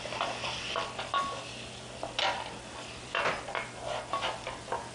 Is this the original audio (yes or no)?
yes